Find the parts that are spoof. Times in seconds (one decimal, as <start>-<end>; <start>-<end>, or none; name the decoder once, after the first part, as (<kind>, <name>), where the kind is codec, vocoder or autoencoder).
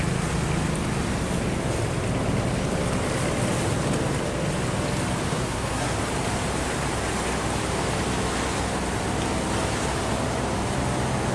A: 5.3-5.9 (codec, SNAC)